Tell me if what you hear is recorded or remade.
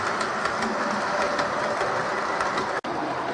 recorded